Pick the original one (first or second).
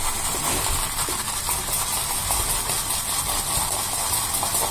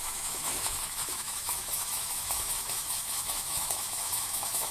first